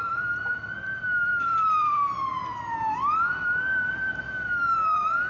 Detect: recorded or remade remade